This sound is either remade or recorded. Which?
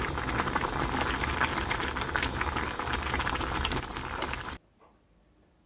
recorded